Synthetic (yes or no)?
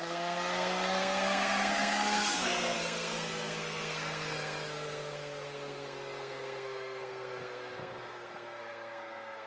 yes